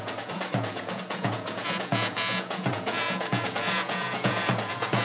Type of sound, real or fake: fake